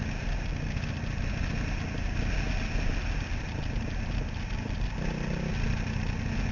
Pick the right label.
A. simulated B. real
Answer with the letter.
B